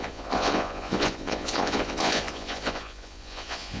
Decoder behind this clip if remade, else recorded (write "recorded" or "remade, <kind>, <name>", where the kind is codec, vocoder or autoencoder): remade, vocoder, Vocos